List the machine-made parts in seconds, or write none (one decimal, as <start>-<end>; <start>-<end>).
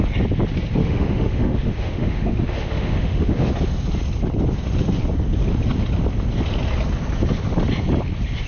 0.8-3.5